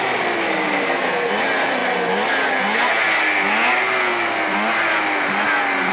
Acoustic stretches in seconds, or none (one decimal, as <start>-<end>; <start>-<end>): 0.0-0.4; 1.3-5.9